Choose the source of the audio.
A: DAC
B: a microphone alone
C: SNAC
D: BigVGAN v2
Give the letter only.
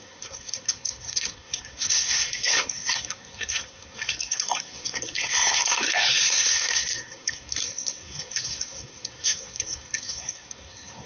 C